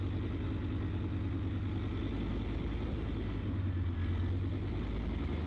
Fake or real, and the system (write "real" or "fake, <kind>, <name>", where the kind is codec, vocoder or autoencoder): real